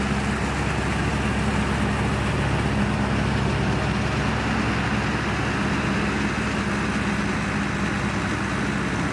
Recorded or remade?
recorded